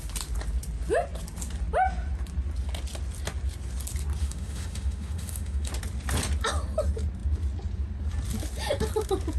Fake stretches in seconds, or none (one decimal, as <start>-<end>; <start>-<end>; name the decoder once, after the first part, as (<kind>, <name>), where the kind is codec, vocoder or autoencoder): 4.2-5.7 (autoencoder, DAC-VAE)